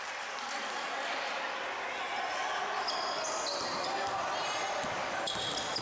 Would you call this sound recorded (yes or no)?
yes